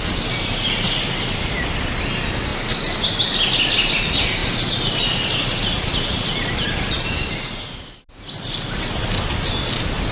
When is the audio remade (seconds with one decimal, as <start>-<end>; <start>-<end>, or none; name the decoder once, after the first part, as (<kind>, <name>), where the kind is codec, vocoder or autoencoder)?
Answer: none